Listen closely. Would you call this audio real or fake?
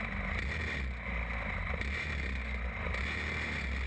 real